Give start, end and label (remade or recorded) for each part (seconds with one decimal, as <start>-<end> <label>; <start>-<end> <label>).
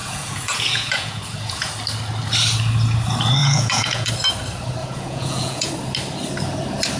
0.0-1.7 remade; 1.7-3.4 recorded; 3.4-4.1 remade; 4.1-4.8 recorded; 4.8-5.7 remade; 5.7-7.0 recorded